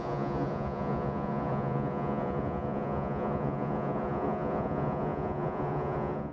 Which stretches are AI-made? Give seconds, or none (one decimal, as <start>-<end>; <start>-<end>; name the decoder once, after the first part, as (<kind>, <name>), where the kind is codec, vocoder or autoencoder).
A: 0.0-6.3 (vocoder, Vocos)